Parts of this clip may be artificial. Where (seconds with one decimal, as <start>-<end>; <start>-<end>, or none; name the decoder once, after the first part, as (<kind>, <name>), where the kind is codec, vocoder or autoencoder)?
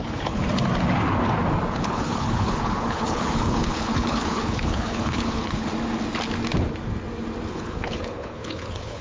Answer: 0.0-0.4 (codec, HILCodec); 1.7-5.7; 7.5-9.0